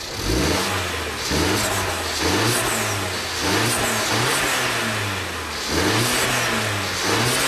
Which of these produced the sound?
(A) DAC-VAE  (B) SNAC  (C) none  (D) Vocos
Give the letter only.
C